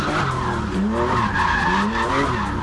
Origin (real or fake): real